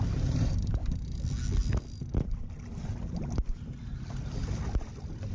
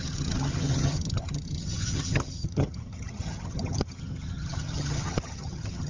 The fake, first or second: second